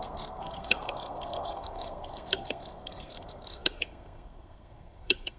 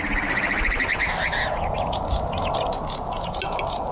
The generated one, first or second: first